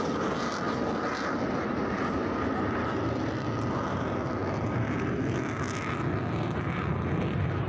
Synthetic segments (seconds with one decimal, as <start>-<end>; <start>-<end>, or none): none